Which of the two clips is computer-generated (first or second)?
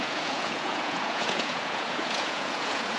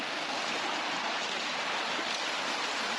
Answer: first